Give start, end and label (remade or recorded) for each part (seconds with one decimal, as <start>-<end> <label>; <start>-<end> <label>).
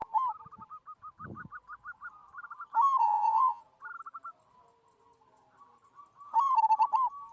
0.0-3.0 recorded; 3.0-3.6 remade; 3.6-7.3 recorded